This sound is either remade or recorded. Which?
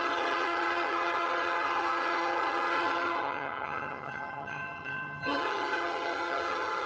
remade